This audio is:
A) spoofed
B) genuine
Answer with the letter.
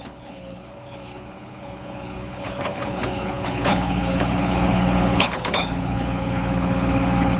A